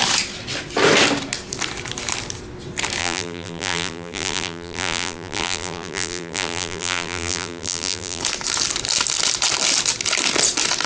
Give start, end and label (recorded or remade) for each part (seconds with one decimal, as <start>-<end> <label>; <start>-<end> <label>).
0.0-3.0 recorded; 3.0-8.2 remade; 8.2-10.9 recorded